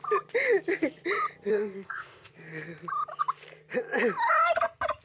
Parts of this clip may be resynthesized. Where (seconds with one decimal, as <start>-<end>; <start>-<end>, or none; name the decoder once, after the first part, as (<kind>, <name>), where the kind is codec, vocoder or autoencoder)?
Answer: 1.5-2.3 (codec, ZipCodec)